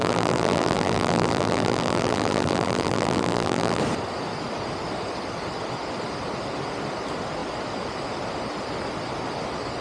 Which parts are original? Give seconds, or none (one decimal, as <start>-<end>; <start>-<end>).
3.8-9.8